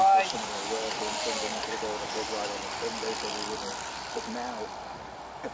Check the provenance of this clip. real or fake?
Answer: real